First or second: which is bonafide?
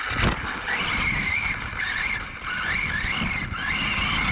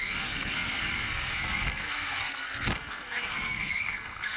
first